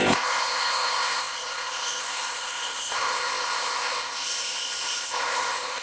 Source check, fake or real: fake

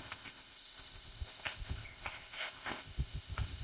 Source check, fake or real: fake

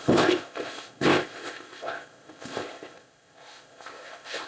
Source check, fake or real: fake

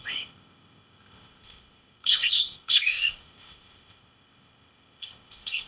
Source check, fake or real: fake